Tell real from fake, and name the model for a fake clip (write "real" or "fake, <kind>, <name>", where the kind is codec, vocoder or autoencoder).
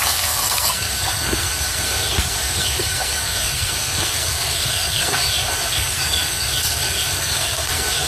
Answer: fake, codec, SNAC